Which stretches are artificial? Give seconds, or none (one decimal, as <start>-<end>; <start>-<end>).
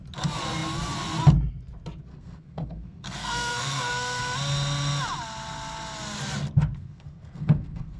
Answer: 2.1-4.2; 6.8-8.0